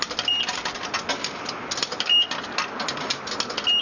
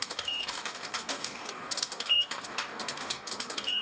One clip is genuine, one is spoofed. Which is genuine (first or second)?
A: first